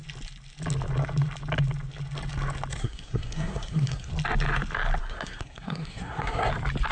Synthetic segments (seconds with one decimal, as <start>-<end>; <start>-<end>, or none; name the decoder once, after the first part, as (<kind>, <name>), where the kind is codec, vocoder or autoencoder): 2.8-4.1 (codec, SNAC); 5.0-6.5